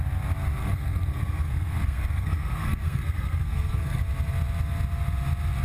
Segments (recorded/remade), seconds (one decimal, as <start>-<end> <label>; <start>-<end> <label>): 0.0-0.6 recorded; 0.6-4.0 remade; 4.0-5.6 recorded